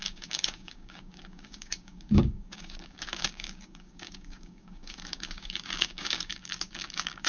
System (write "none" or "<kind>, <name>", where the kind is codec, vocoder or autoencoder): codec, DAC